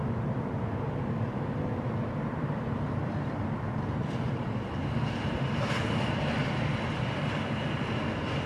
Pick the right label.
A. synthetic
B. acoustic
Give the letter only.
B